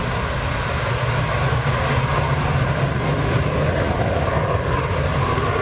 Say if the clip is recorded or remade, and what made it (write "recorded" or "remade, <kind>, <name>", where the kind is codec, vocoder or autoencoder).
recorded